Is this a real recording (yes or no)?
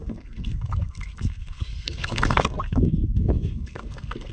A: no